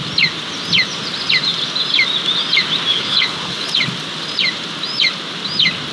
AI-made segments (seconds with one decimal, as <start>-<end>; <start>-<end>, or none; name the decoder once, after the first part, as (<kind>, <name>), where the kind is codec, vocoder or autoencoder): 2.9-3.7 (codec, HILCodec)